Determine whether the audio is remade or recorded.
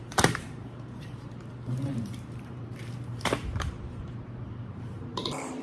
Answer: remade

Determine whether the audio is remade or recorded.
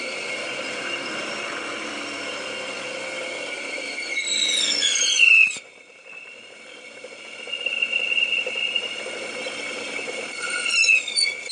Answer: recorded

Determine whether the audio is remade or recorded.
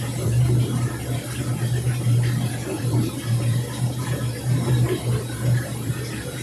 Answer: remade